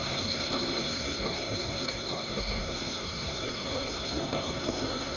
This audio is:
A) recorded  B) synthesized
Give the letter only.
B